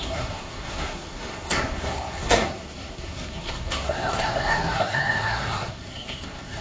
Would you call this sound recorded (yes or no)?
no